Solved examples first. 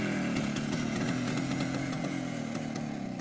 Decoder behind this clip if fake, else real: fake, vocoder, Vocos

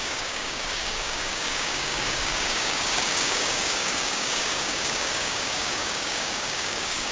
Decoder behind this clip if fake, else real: fake, codec, DAC